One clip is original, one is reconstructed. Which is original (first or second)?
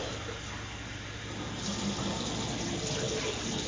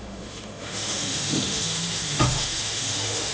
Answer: first